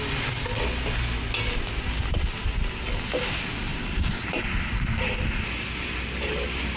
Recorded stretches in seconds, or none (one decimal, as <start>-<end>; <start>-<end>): 0.0-3.7; 4.4-6.8